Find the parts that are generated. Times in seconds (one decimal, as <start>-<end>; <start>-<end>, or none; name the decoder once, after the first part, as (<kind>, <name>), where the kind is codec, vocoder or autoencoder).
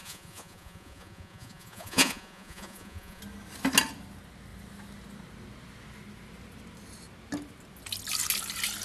0.0-3.2 (vocoder, Vocos)